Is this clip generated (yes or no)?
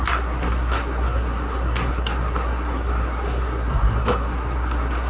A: yes